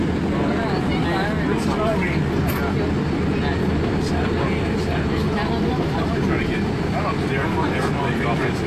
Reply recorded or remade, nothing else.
recorded